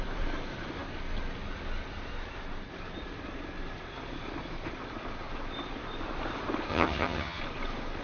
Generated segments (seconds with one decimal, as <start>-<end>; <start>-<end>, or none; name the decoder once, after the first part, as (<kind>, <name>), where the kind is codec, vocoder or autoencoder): 6.7-7.4 (vocoder, HiFi-GAN)